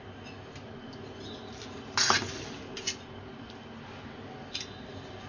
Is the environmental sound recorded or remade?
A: recorded